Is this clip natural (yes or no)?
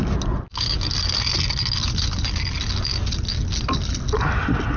yes